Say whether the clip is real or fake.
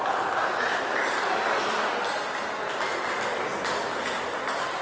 real